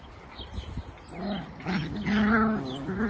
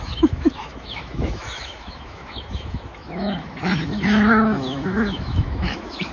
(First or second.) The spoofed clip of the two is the second